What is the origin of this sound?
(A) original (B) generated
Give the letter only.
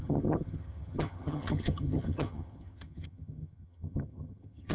B